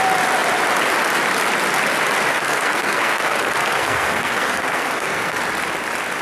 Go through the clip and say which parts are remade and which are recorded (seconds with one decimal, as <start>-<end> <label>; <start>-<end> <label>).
0.0-2.3 recorded; 2.3-5.4 remade; 5.4-6.2 recorded